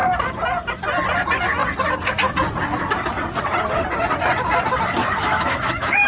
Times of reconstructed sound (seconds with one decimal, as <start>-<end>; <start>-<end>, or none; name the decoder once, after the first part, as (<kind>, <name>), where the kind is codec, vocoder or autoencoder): 5.0-6.1 (autoencoder, DAC-VAE)